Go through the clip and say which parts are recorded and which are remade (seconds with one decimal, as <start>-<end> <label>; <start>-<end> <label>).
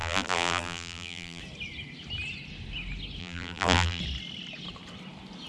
0.0-1.4 remade; 1.4-3.2 recorded; 3.2-4.0 remade; 4.0-5.5 recorded